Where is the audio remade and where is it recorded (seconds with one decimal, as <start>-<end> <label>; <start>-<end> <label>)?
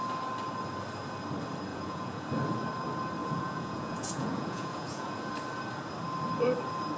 0.0-1.7 recorded; 1.7-2.3 remade; 2.3-3.2 recorded; 3.2-5.3 remade; 5.3-7.0 recorded